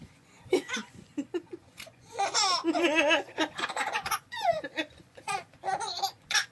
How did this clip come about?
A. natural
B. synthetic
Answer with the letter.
B